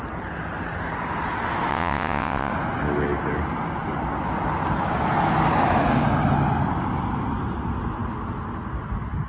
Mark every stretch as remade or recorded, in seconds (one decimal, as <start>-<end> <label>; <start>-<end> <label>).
0.0-1.7 recorded; 1.7-2.5 remade; 2.5-9.3 recorded